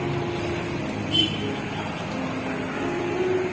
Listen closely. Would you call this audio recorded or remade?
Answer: recorded